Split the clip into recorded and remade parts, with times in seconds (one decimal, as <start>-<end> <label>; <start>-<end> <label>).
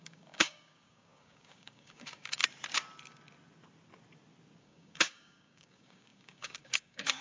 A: 0.0-2.4 remade; 2.4-4.6 recorded; 4.6-7.2 remade